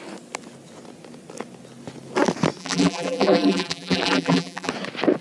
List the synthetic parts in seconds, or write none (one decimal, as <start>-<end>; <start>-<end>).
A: 2.6-4.7